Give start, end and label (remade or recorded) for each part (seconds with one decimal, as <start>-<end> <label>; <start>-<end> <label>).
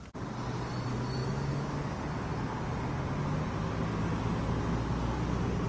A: 0.0-1.2 recorded; 1.2-1.9 remade; 1.9-5.7 recorded